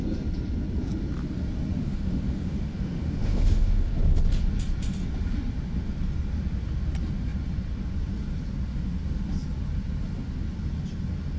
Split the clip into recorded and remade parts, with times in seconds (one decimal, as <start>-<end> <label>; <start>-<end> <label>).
0.0-1.8 recorded; 1.8-3.9 remade; 3.9-11.4 recorded